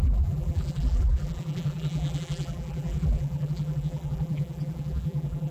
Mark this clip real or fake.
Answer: fake